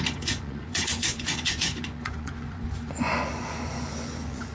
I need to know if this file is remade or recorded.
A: remade